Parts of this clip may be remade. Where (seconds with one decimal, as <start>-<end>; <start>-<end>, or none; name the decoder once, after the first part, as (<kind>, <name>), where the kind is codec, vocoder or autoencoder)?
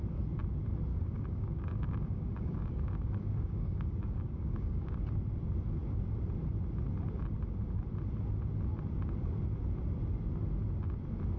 0.9-5.0 (codec, DAC)